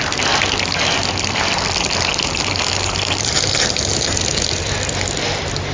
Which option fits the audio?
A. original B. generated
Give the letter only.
A